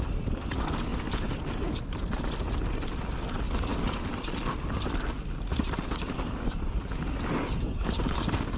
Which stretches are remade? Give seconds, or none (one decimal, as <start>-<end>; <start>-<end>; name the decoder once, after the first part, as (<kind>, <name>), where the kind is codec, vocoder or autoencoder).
none

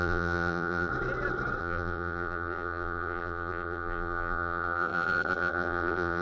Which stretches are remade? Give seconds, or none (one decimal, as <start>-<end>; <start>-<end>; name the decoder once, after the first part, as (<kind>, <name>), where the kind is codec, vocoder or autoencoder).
0.0-0.9 (vocoder, BigVGAN v2); 1.6-6.2

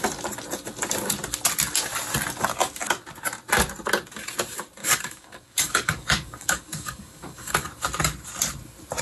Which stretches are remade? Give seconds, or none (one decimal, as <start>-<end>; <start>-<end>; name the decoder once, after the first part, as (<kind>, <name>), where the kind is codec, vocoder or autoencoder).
4.8-7.7 (codec, DAC)